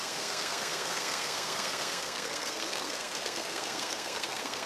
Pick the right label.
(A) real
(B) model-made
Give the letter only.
B